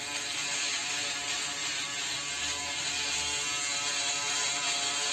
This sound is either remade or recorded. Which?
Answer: recorded